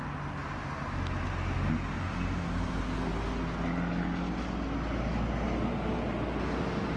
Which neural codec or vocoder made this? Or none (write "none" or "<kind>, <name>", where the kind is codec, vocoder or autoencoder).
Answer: none